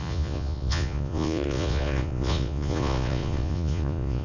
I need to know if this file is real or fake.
fake